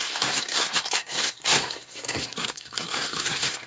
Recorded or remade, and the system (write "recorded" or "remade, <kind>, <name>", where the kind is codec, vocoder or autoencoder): remade, codec, SNAC